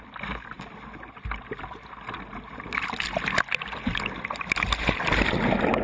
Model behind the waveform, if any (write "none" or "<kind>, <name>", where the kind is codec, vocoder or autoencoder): none